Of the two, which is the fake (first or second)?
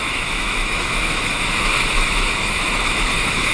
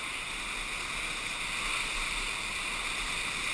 first